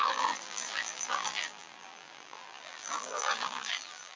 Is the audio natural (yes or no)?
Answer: no